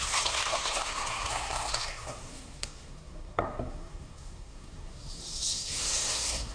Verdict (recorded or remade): remade